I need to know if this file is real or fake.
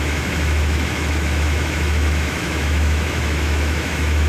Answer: fake